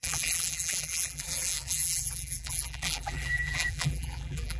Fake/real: fake